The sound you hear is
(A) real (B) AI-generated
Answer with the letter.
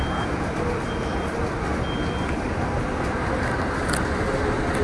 A